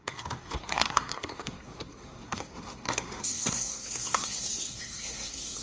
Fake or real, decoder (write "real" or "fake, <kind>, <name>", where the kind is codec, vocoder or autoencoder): fake, codec, SNAC